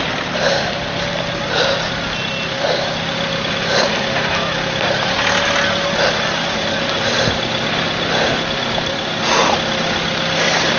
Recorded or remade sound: recorded